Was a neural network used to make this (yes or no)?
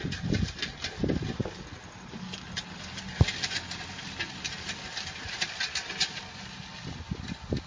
no